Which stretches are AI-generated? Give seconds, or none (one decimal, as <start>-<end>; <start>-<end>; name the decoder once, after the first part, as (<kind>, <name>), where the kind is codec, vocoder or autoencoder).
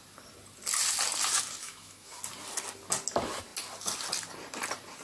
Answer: 1.6-2.2 (autoencoder, DAC-VAE)